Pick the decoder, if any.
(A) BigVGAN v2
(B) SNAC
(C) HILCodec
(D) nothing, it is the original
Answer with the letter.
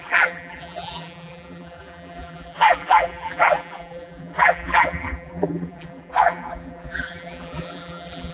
A